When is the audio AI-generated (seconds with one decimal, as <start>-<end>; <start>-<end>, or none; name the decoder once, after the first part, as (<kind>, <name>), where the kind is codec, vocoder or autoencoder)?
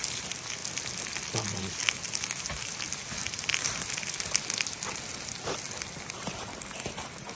none